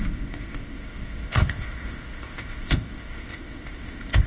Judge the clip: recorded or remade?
remade